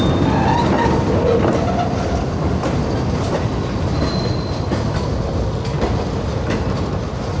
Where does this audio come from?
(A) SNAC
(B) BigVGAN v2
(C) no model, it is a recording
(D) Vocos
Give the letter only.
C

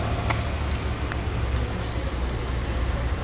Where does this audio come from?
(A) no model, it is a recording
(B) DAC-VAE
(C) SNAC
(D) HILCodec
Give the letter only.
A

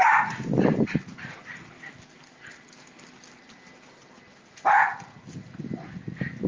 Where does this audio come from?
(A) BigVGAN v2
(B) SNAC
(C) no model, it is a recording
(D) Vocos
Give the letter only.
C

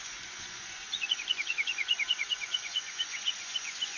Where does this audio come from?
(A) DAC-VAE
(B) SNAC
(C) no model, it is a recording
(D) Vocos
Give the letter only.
D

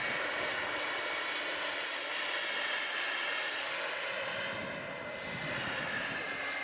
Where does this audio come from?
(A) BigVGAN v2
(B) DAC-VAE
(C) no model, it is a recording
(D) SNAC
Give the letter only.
C